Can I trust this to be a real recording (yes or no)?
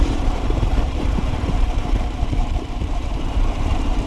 no